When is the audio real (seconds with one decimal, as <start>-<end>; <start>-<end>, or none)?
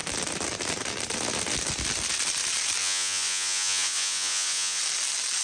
0.0-2.8; 4.8-5.4